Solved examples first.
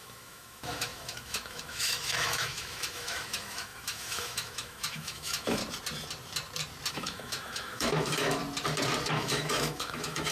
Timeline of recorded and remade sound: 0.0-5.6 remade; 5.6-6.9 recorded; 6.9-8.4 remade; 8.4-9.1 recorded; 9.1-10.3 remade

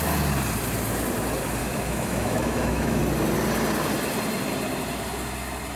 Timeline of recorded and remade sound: 0.0-1.6 recorded; 1.6-3.0 remade; 3.0-5.8 recorded